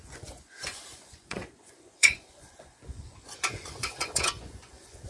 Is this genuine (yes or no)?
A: no